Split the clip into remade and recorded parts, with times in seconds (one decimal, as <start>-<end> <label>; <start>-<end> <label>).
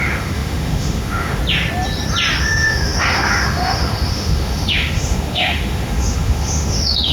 0.0-1.4 remade; 1.4-2.4 recorded; 2.4-7.1 remade